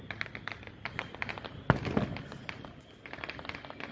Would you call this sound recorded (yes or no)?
yes